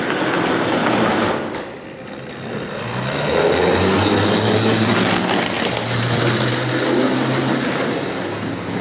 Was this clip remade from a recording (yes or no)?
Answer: no